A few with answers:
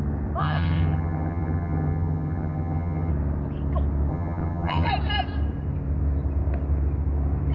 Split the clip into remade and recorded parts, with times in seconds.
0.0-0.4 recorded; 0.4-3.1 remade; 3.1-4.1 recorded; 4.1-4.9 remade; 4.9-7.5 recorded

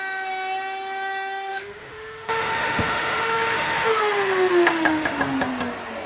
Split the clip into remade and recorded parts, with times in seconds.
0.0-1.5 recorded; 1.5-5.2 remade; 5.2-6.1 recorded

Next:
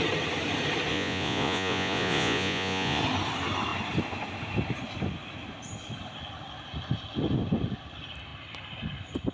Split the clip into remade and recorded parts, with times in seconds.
0.0-0.9 recorded; 0.9-3.0 remade; 3.0-9.3 recorded

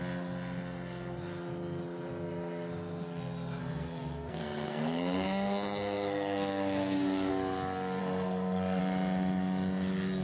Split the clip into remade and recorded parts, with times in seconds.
0.0-3.6 recorded; 3.6-7.3 remade; 7.3-8.0 recorded; 8.0-8.8 remade; 8.8-10.2 recorded